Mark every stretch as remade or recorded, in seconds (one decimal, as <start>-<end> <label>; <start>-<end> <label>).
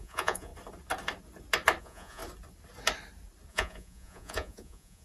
0.0-0.5 remade; 0.5-1.8 recorded; 1.8-2.2 remade; 2.2-3.5 recorded; 3.5-5.0 remade